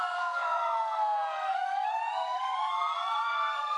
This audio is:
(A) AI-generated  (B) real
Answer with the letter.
A